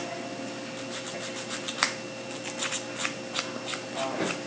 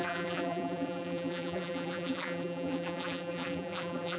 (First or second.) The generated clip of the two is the second